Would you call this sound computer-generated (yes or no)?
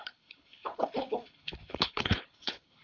yes